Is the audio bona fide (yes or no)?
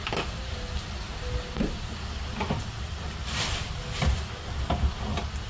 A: yes